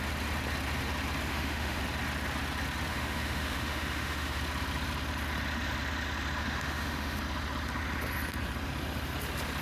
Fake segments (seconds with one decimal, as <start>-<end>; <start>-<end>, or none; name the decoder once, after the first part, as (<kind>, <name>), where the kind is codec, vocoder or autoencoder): 1.3-1.8 (autoencoder, DAC-VAE); 2.9-4.4; 6.4-7.2